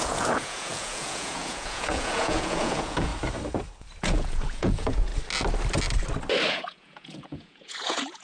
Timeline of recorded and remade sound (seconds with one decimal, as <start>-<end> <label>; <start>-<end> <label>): 0.0-3.1 remade; 3.1-4.0 recorded; 4.0-5.1 remade; 5.1-6.5 recorded; 6.5-8.2 remade